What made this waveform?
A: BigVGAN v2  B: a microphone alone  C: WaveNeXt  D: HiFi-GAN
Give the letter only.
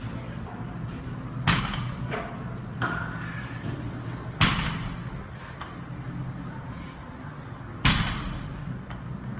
B